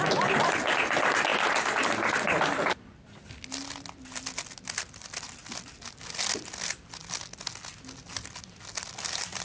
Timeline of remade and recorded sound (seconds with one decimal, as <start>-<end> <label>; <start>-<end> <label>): 0.0-1.3 remade; 1.3-5.9 recorded; 5.9-7.0 remade; 7.0-8.1 recorded; 8.1-9.4 remade